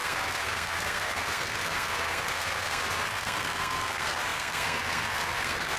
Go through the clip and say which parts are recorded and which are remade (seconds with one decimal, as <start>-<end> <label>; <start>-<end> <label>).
0.0-5.8 remade